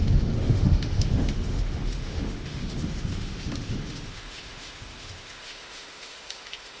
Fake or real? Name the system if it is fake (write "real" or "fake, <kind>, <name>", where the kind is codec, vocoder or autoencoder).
fake, autoencoder, DAC-VAE